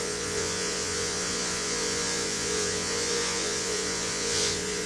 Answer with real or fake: fake